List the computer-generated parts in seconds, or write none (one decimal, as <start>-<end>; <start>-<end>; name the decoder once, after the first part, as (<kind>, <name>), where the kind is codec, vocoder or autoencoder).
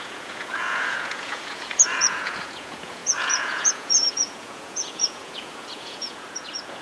0.0-6.8 (vocoder, Vocos)